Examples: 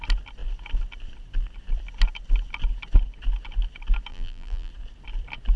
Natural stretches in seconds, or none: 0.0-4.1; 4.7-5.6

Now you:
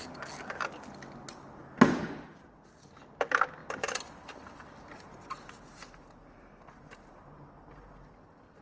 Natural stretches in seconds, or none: 0.0-8.6

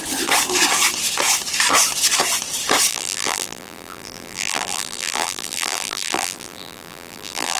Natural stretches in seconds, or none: 0.0-2.9

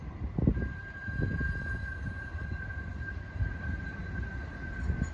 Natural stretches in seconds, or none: 1.8-5.1

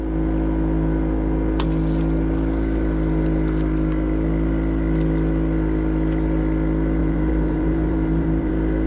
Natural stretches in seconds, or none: 0.0-7.0; 8.5-8.9

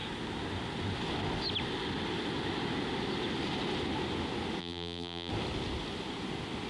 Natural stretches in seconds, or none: 0.0-4.6; 5.3-6.7

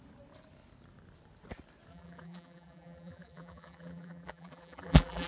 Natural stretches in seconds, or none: 0.0-1.9

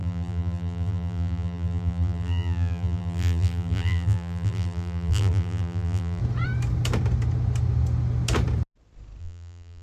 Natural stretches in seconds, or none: 6.2-9.2